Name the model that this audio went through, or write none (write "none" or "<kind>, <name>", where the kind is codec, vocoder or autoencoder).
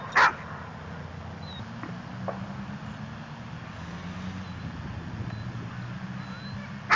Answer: none